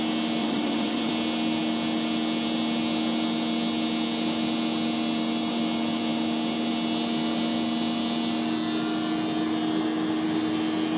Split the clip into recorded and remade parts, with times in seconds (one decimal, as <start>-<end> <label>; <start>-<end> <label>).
0.0-0.4 recorded; 0.4-1.1 remade; 1.1-11.0 recorded